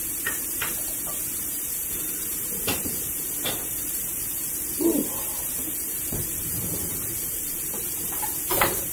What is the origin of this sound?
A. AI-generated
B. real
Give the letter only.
A